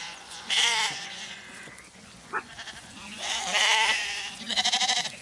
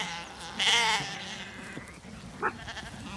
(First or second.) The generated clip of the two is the first